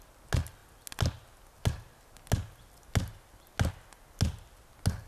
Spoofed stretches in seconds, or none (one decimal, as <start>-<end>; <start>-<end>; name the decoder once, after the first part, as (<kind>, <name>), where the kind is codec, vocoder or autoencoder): none